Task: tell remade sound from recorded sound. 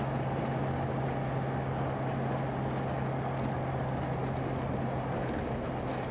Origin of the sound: recorded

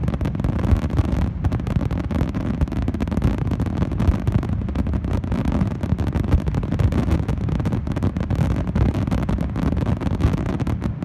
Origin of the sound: recorded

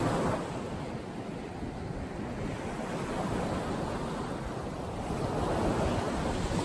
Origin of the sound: recorded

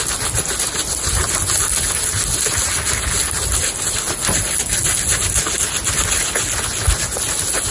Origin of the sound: recorded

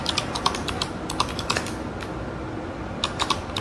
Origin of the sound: recorded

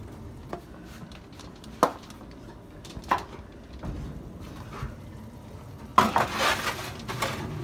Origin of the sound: recorded